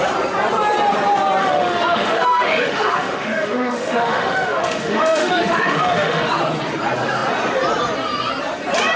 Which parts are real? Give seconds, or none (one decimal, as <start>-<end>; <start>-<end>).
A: 0.0-1.4; 6.3-9.0